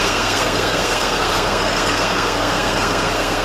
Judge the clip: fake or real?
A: fake